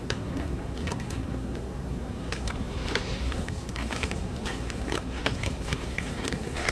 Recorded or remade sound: remade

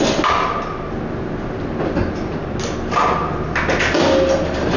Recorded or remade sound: recorded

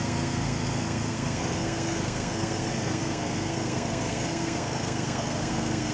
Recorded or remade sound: remade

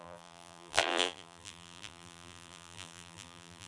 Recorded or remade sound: remade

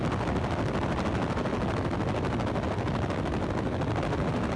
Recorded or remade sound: recorded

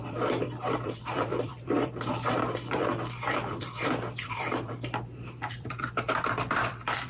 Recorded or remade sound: remade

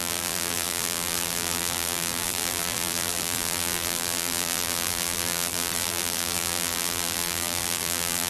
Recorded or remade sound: remade